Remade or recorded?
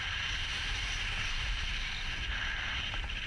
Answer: remade